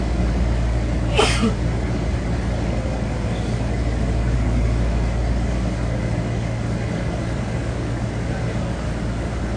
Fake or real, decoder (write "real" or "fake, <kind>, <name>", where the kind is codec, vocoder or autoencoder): fake, codec, DAC